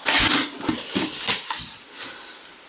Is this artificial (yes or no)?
no